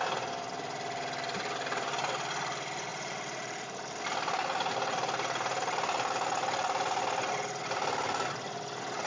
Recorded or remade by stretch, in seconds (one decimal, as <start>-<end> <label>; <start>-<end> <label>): 0.0-2.9 recorded; 2.9-4.0 remade; 4.0-9.1 recorded